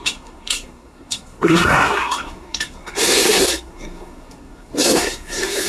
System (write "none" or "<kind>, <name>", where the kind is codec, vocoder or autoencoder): codec, SNAC